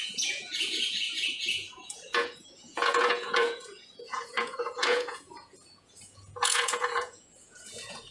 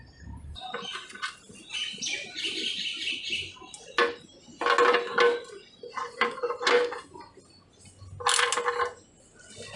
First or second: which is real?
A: second